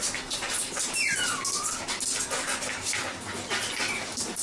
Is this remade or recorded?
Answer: recorded